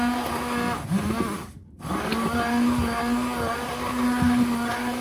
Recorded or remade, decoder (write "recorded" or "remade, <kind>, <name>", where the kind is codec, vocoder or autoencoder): recorded